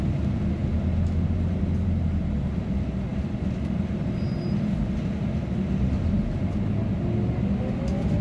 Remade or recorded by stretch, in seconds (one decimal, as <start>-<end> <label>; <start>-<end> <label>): 0.0-8.2 recorded